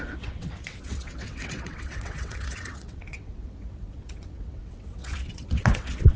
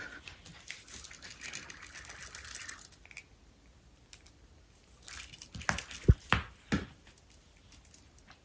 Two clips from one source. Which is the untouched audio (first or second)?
second